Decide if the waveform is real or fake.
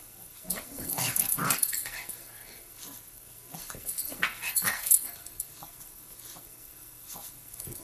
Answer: fake